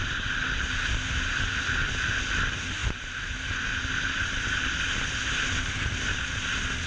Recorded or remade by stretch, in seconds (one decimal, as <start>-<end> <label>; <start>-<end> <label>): 0.0-6.9 recorded